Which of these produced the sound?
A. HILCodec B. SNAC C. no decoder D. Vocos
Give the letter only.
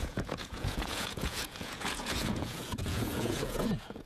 D